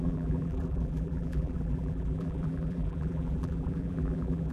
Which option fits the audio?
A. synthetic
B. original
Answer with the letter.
A